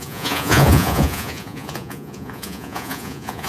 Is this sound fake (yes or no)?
yes